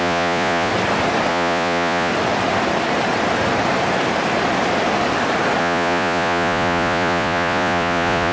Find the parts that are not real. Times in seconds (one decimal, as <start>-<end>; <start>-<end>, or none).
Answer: 0.0-0.7; 1.3-2.1; 5.6-8.3